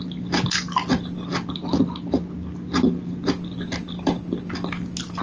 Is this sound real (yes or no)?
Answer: yes